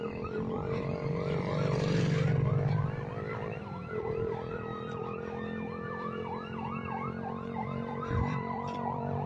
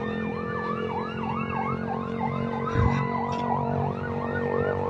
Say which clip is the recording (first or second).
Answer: second